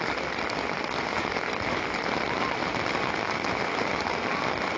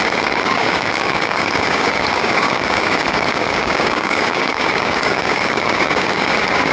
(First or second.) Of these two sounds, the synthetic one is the second